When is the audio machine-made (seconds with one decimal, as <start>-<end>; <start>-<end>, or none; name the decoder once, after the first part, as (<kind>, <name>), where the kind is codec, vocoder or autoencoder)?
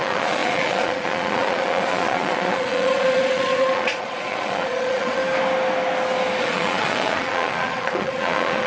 0.0-5.2 (vocoder, Vocos); 6.4-8.7